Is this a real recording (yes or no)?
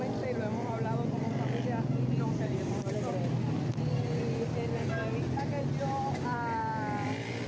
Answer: yes